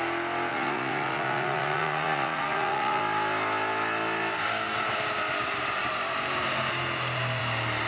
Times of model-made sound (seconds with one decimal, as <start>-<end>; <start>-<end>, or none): 0.5-3.0